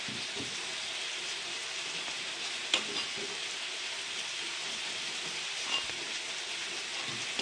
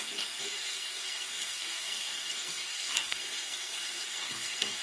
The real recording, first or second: first